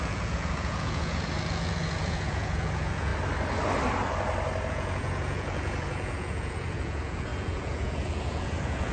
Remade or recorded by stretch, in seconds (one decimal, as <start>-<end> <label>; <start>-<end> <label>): 0.0-3.1 remade; 3.1-4.7 recorded; 4.7-8.9 remade